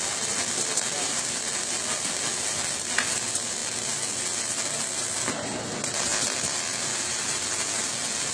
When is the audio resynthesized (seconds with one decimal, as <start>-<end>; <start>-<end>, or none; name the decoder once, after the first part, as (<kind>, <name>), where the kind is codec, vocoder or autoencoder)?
none